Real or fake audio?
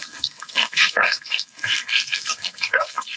fake